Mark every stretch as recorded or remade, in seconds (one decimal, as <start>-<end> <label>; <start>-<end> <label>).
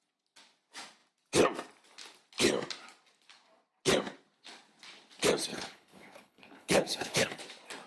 0.0-5.5 recorded; 5.5-7.4 remade; 7.4-7.9 recorded